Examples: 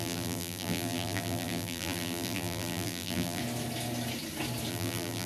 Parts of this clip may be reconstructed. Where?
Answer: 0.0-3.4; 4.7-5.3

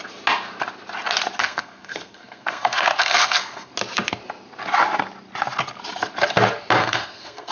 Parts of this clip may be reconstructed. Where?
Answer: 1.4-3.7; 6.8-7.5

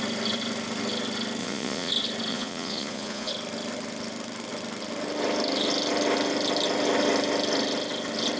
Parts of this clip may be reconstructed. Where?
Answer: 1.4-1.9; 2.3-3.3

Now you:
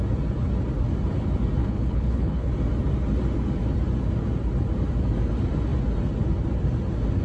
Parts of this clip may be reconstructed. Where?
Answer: 1.6-2.5